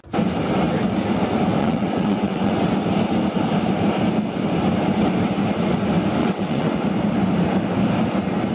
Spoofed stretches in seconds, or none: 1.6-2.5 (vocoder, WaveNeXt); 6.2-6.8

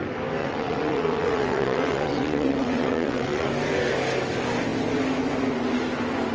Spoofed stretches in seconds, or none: 0.4-3.5 (vocoder, WaveNeXt)

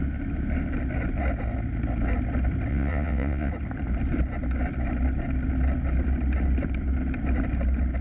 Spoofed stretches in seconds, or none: 2.7-3.5 (vocoder, WaveNeXt)

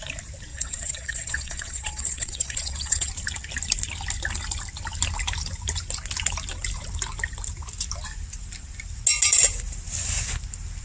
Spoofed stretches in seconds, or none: 0.5-3.1 (vocoder, WaveNeXt)

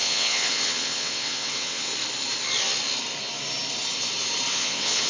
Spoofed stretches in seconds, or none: 0.0-1.9 (vocoder, WaveNeXt); 4.5-5.1

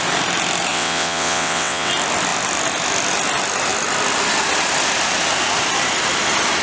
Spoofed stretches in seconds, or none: 0.7-1.9 (vocoder, WaveNeXt)